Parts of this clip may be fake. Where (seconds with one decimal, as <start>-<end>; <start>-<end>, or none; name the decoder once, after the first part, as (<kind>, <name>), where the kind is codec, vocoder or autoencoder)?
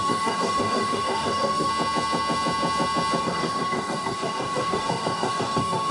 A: 0.0-1.7 (codec, DAC); 3.2-5.9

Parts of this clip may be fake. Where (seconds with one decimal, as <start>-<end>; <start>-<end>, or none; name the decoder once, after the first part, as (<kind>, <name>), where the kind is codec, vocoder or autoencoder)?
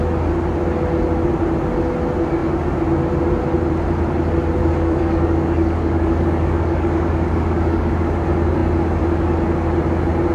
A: 4.6-7.9 (codec, DAC)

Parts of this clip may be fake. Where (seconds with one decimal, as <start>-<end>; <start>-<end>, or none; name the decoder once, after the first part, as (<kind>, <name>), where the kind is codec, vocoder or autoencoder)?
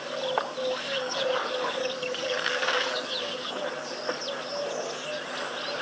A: 0.6-3.6 (codec, DAC)